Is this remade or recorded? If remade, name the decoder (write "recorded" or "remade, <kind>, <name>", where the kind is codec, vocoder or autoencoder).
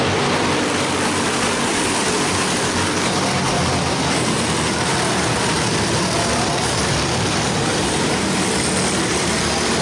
recorded